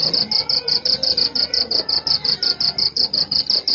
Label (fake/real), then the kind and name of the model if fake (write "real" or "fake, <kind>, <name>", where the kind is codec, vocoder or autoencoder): real